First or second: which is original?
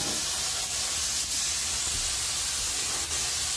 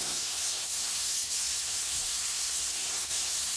first